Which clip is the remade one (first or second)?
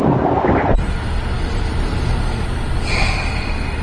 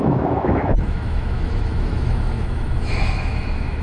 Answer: second